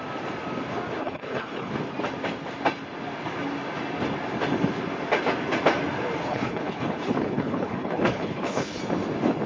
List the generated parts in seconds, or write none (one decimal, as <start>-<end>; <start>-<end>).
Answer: 1.0-1.7; 6.2-8.8